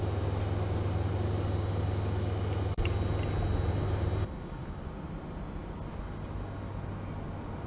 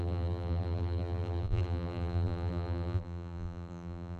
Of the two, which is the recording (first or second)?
first